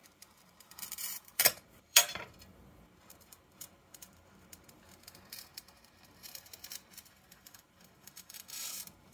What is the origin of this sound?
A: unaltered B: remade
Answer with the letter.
B